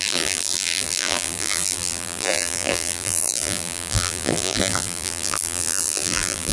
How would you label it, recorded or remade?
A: remade